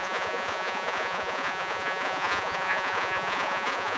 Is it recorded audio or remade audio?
remade